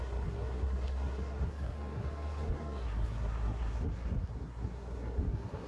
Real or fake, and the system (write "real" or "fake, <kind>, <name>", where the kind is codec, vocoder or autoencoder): fake, codec, SNAC